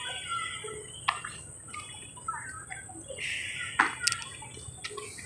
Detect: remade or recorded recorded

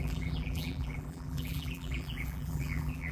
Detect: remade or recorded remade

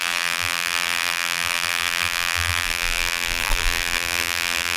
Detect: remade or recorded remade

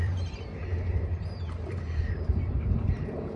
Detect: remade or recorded remade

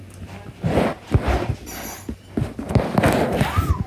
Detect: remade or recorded recorded